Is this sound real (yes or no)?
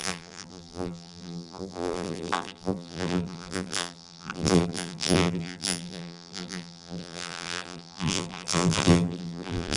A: no